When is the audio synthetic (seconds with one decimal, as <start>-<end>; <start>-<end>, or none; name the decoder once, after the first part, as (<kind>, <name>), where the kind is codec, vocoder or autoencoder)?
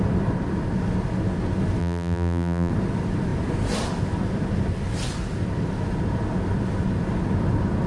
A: 1.8-2.7 (vocoder, BigVGAN v2)